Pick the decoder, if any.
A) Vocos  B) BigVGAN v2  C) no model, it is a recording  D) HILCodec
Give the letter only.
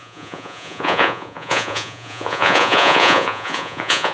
A